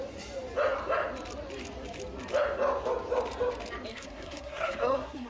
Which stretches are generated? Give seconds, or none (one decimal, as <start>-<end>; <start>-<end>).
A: 3.9-5.3

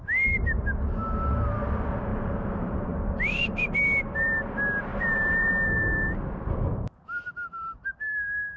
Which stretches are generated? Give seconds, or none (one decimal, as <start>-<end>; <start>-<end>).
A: 2.1-3.1; 4.9-5.5